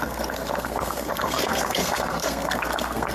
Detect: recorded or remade remade